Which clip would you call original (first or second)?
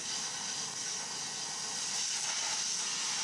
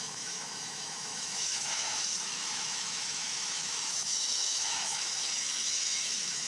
first